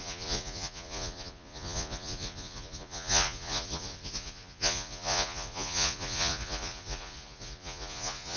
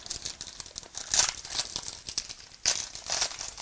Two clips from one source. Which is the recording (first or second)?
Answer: second